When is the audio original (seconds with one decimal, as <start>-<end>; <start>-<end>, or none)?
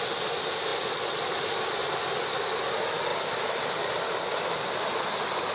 0.0-3.1; 4.6-5.5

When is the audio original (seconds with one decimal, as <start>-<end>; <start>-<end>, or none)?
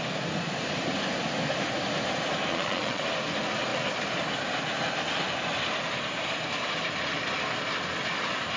0.0-2.5; 3.0-8.6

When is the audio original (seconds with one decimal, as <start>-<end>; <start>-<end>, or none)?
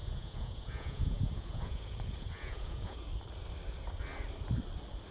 3.1-5.1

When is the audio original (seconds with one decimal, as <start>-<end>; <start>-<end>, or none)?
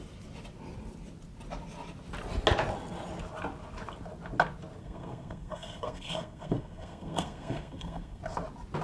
0.0-4.8; 8.2-8.8